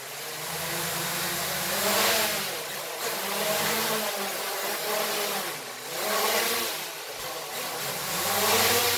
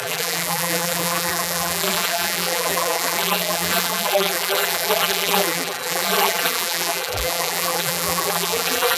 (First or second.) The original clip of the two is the first